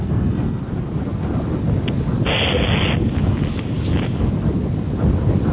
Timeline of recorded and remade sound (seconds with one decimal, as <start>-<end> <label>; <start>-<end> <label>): 0.0-0.6 remade; 0.6-5.5 recorded